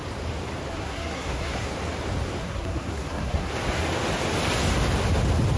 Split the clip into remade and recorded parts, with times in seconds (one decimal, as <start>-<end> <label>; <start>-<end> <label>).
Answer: 0.0-0.7 recorded; 0.7-1.7 remade; 1.7-2.4 recorded; 2.4-3.5 remade; 3.5-5.6 recorded

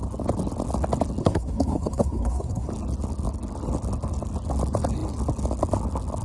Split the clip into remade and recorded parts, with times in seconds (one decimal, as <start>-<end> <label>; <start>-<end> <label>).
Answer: 0.0-1.2 recorded; 1.2-2.7 remade; 2.7-6.2 recorded

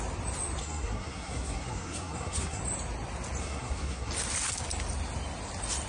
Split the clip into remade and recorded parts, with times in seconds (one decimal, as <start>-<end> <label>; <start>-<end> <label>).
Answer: 0.0-0.6 recorded; 0.6-2.6 remade; 2.6-3.4 recorded; 3.4-4.1 remade; 4.1-5.9 recorded